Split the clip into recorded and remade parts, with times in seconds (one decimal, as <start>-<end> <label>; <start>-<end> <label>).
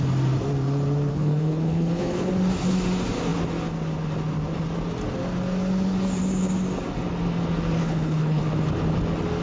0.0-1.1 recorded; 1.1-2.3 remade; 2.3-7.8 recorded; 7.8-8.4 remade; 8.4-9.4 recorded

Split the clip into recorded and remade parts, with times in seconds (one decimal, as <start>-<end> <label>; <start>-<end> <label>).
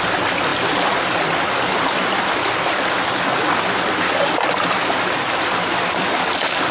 0.0-6.7 recorded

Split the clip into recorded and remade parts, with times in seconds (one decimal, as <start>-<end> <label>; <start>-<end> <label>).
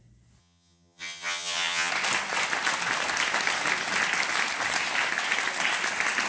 0.0-0.4 recorded; 0.4-1.9 remade; 1.9-6.3 recorded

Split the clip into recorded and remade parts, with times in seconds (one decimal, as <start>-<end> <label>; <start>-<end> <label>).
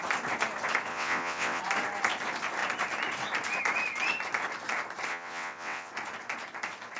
0.0-0.9 recorded; 0.9-1.6 remade; 1.6-5.1 recorded; 5.1-5.9 remade; 5.9-7.0 recorded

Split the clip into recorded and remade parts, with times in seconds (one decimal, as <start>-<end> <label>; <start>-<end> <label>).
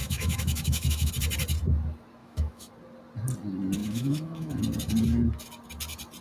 0.0-1.1 remade; 1.1-2.2 recorded; 2.2-2.7 remade; 2.7-3.8 recorded; 3.8-4.6 remade; 4.6-6.2 recorded